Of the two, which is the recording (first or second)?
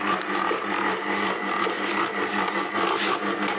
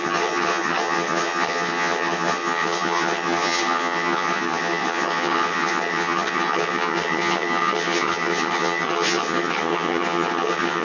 first